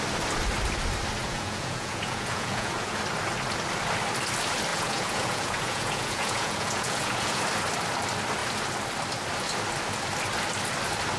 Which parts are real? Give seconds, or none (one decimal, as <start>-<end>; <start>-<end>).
0.0-1.2; 3.0-4.7; 7.4-11.2